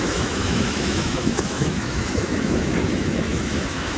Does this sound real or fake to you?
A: fake